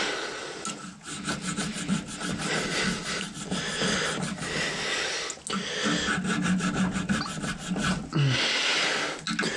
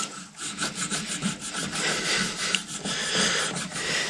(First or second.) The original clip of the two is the first